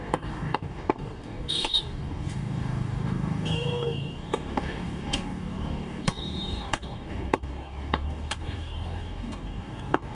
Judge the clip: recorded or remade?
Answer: remade